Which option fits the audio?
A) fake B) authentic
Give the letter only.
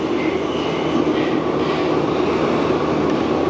B